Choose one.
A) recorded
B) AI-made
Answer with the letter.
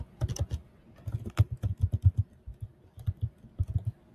A